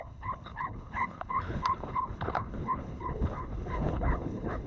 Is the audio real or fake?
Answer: fake